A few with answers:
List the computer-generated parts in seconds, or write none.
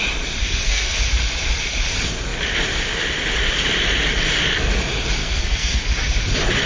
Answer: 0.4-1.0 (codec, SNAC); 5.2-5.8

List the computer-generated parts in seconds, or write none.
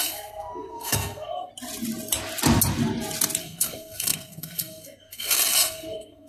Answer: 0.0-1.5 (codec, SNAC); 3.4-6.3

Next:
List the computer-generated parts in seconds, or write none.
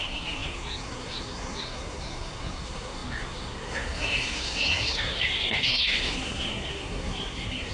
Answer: 0.0-7.7 (codec, SNAC)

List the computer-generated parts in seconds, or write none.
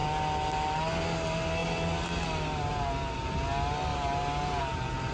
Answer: none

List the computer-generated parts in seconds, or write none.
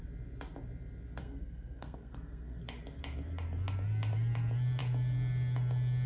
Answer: 1.2-2.6 (codec, SNAC)